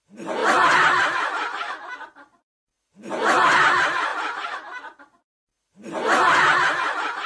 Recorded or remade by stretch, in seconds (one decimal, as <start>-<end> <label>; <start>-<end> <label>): 0.0-7.3 recorded